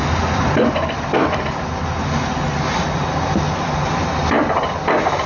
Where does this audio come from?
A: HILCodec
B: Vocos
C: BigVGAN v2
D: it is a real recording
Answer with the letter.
D